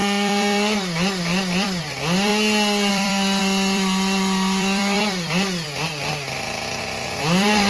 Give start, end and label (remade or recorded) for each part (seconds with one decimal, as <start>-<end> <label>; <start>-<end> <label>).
0.0-2.3 remade; 2.3-2.9 recorded; 2.9-7.7 remade